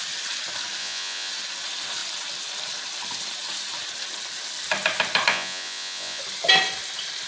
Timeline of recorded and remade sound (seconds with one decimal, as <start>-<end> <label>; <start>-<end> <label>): 0.0-0.8 recorded; 0.8-1.3 remade; 1.3-5.3 recorded; 5.3-6.2 remade; 6.2-7.3 recorded